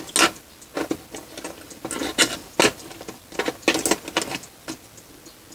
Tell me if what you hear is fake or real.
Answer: real